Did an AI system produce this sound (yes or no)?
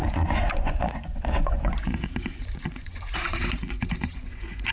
yes